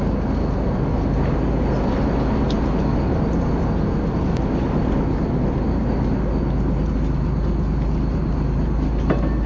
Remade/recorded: recorded